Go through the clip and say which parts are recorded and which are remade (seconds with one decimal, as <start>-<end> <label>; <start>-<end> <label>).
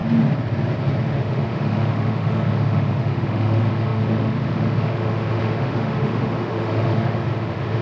0.0-1.0 recorded; 1.0-7.8 remade